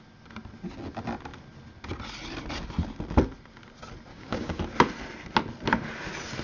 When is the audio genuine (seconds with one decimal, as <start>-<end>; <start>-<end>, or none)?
0.0-4.1; 4.6-6.4